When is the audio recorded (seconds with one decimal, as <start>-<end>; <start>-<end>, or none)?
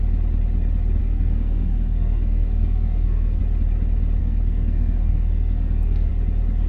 0.0-1.0; 3.4-4.2; 6.1-6.7